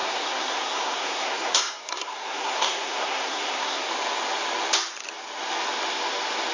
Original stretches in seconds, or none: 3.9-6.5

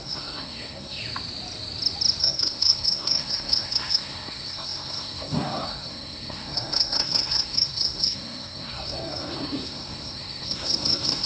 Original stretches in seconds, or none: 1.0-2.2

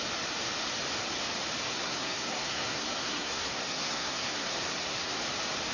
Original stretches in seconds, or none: 0.0-1.7; 5.1-5.7